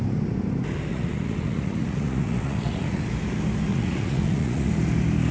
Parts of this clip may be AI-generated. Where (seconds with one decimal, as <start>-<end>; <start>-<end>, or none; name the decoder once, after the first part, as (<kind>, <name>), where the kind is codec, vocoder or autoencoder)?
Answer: 0.9-3.0 (vocoder, Vocos); 3.7-4.7